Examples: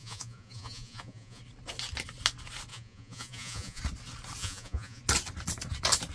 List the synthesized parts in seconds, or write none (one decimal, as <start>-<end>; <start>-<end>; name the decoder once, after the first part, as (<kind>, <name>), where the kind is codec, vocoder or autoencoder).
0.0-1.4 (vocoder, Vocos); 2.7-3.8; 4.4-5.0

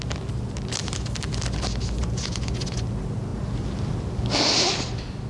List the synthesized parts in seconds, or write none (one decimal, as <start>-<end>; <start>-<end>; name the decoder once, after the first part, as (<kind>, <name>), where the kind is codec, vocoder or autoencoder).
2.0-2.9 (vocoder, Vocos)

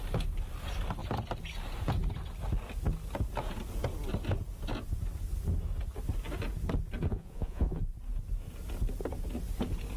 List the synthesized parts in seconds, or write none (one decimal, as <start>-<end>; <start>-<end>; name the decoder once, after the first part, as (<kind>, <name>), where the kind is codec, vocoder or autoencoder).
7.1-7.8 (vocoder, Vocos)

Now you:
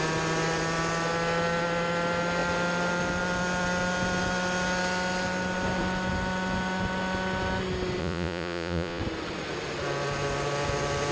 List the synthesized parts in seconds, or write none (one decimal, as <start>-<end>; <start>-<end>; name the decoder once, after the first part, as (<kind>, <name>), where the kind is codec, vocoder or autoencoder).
8.0-9.0 (vocoder, Vocos)